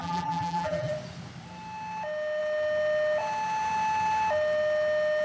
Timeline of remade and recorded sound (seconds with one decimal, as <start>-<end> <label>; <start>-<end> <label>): 0.0-0.9 remade; 0.9-5.2 recorded